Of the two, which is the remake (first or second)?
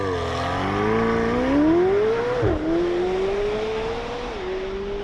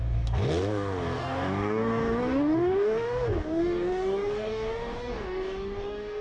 second